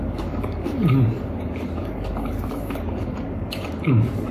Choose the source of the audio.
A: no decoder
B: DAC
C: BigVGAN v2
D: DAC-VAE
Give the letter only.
B